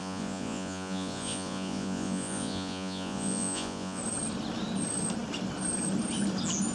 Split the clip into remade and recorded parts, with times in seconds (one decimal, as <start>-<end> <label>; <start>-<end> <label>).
0.0-4.0 remade; 4.0-6.7 recorded